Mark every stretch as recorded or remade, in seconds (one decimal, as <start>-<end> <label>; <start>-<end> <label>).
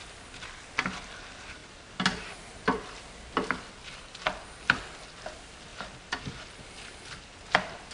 0.0-7.9 recorded